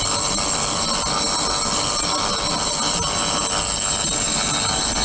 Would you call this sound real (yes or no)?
yes